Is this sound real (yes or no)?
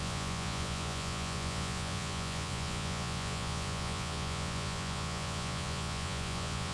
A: no